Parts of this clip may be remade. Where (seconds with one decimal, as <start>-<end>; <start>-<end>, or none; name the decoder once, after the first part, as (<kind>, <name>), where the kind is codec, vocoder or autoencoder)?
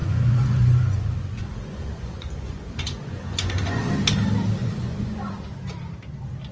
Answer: 0.0-3.9 (vocoder, Vocos); 4.6-5.3